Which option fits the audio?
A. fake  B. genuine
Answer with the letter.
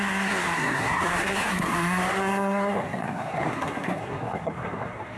A